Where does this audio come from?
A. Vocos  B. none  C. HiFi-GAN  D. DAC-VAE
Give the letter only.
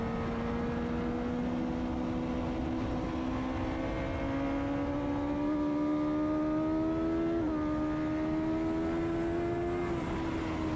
B